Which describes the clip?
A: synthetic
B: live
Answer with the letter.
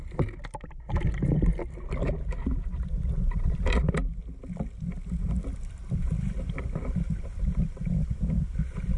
B